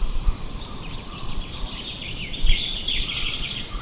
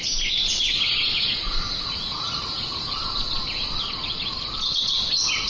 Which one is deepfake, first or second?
first